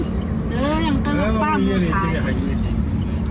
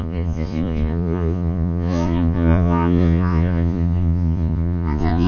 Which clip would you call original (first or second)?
first